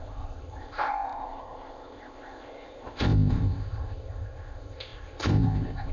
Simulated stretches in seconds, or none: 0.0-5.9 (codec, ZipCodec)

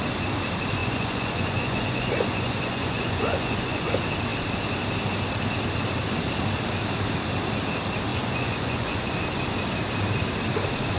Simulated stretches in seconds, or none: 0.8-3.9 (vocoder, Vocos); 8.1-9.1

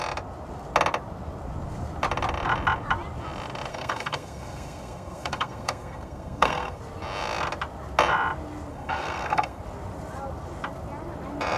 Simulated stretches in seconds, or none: 3.7-6.8 (codec, SNAC); 8.7-9.6

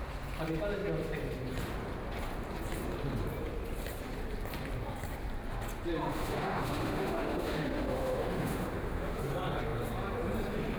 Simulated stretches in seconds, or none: 6.1-9.2 (autoencoder, DAC-VAE)